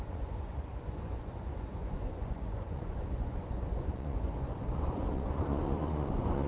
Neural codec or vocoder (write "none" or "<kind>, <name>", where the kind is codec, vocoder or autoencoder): vocoder, Vocos